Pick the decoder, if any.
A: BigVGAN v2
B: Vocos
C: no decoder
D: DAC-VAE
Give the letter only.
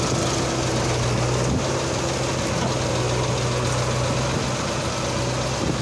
C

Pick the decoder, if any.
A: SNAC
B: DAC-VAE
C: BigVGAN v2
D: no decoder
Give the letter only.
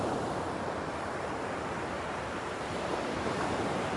C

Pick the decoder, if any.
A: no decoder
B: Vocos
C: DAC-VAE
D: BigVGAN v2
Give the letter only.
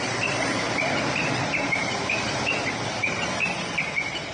D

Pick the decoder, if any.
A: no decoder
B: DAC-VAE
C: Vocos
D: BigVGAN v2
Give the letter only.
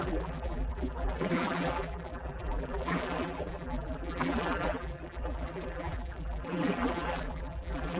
D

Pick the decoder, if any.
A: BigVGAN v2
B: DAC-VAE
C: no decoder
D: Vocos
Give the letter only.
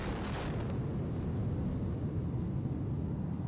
C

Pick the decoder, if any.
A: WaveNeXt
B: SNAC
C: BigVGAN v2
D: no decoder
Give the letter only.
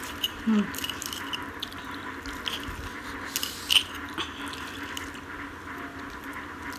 D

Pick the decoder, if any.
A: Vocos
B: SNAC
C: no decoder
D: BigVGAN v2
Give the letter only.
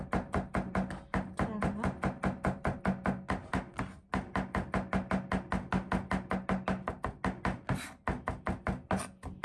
C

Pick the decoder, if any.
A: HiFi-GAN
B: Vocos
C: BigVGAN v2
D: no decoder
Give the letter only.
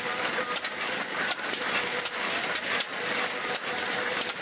D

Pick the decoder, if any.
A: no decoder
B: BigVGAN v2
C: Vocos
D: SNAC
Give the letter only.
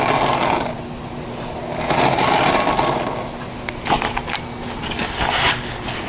A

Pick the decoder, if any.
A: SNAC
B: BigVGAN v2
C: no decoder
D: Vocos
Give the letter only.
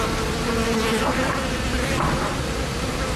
C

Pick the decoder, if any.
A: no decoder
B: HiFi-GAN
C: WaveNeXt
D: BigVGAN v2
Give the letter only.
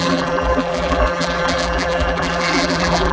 D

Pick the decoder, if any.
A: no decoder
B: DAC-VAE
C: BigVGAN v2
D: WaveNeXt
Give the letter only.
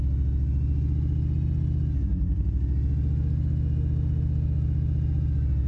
A